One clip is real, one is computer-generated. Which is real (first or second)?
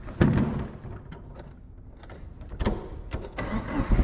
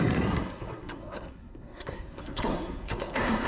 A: first